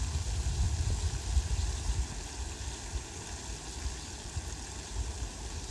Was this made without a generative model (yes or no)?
yes